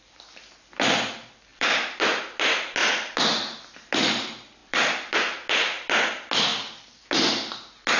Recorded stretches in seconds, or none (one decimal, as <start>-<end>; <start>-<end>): 0.0-1.5; 2.2-2.8; 3.3-4.6; 5.2-6.5; 7.0-8.0